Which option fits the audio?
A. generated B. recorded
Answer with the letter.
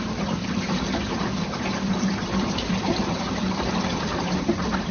A